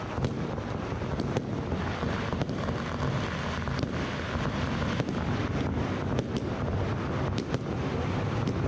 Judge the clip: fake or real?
real